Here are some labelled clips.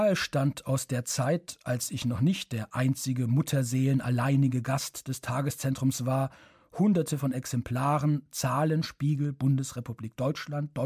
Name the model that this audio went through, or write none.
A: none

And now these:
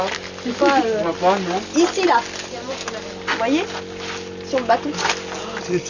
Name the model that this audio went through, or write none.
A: none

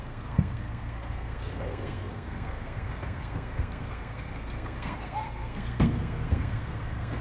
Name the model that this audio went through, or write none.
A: codec, SNAC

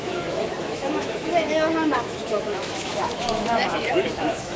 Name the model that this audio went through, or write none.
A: autoencoder, DAC-VAE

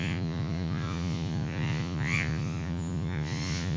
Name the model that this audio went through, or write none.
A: vocoder, Vocos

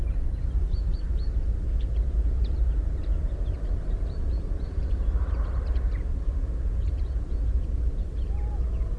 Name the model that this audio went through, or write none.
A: vocoder, BigVGAN v2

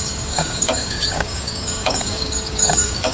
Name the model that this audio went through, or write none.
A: codec, DAC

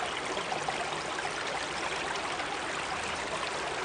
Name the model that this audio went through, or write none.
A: none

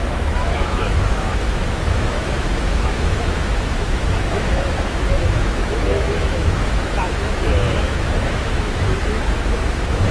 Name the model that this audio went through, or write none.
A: autoencoder, DAC-VAE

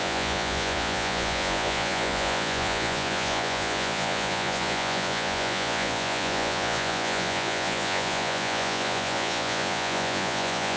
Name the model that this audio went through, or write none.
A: vocoder, Vocos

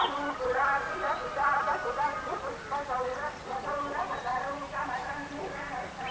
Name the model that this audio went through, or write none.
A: none